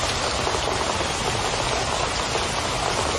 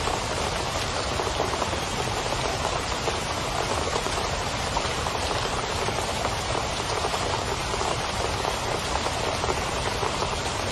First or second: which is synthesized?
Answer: second